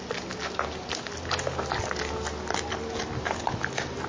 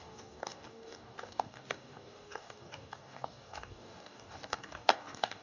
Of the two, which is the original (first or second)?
first